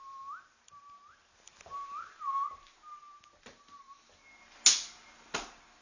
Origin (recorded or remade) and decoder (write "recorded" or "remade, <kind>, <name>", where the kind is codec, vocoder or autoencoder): recorded